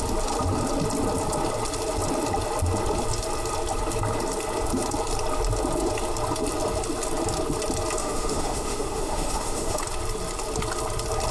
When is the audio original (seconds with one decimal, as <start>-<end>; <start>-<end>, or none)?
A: 0.0-8.0; 9.8-11.3